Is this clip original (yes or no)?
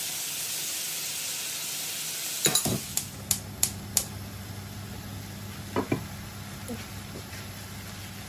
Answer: yes